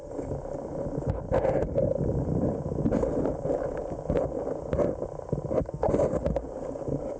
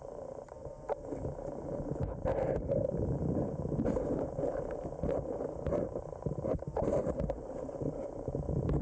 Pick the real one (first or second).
first